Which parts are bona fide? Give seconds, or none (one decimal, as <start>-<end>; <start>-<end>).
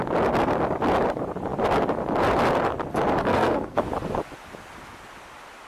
0.0-3.2; 3.8-5.7